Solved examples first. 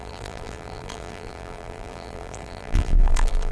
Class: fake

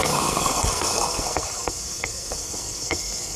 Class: fake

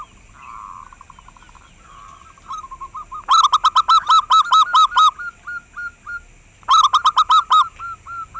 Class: real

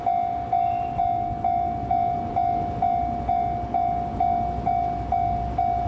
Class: real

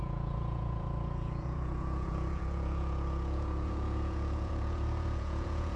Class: fake